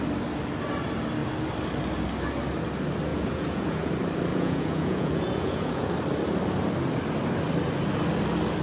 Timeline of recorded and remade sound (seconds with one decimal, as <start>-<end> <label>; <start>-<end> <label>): 0.0-3.1 recorded; 3.1-3.9 remade; 3.9-4.3 recorded; 4.3-5.9 remade; 5.9-8.6 recorded